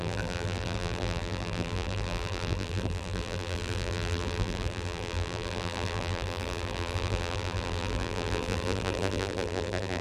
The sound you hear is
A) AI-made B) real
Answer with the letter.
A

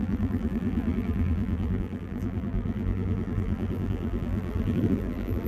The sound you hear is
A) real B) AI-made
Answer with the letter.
B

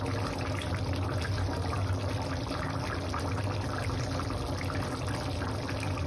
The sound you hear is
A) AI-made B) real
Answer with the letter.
B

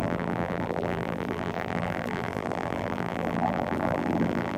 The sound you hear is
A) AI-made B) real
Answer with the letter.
A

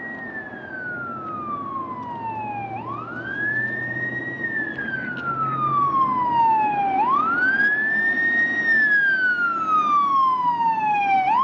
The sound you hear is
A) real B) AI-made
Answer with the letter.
A